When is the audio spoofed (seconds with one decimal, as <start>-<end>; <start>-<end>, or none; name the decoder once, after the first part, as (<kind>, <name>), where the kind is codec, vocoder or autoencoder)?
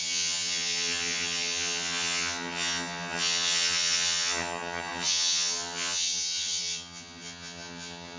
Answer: 0.0-8.2 (vocoder, HiFi-GAN)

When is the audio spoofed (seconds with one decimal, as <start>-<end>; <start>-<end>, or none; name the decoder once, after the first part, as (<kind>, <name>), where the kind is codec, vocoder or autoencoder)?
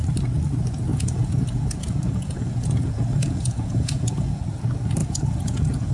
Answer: 0.9-4.4 (vocoder, Vocos); 5.0-5.9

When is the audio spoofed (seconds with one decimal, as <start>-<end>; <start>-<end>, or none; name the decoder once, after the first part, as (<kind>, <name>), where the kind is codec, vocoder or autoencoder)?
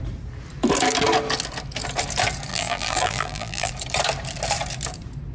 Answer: 2.5-3.7 (vocoder, BigVGAN v2)